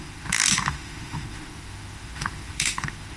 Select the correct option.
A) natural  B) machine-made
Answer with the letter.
B